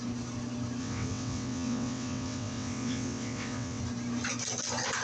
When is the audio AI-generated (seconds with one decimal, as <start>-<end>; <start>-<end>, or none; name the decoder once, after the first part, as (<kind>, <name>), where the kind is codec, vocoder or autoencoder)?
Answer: 0.8-3.8 (vocoder, WaveNeXt)